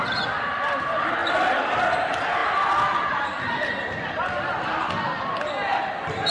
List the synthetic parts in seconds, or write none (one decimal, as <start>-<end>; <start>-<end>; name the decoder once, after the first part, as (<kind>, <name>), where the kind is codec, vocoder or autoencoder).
none

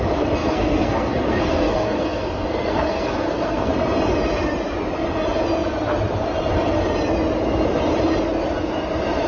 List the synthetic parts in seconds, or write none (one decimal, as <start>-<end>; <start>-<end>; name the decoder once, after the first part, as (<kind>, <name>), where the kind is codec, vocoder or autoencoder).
0.4-3.7 (codec, SNAC)

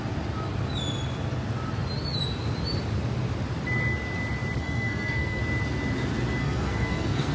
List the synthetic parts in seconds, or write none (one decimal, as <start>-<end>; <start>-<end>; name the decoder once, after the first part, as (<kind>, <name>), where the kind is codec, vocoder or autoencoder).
4.6-5.4 (codec, SNAC); 6.4-7.3

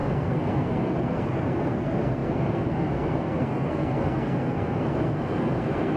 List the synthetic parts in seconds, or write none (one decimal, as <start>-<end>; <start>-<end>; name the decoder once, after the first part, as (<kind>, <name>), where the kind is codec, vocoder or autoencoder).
0.0-6.0 (codec, SNAC)

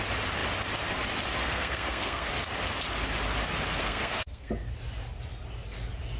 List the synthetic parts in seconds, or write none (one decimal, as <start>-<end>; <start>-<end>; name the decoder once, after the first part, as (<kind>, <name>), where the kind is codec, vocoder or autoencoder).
1.4-2.3 (codec, SNAC); 3.8-4.5